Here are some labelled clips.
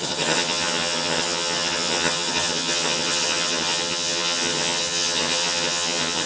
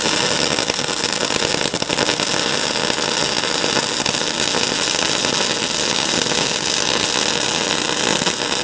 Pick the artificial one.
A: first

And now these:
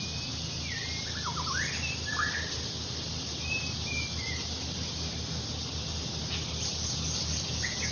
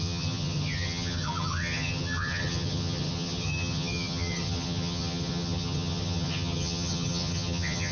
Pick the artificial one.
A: second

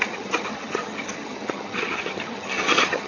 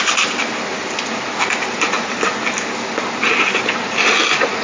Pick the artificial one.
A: first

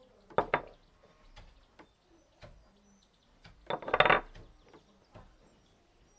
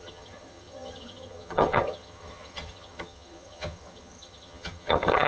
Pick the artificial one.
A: second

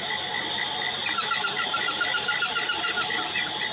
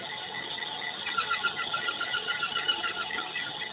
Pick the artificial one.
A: second